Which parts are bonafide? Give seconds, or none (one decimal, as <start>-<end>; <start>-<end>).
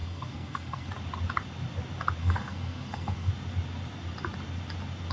0.9-2.2; 3.3-5.1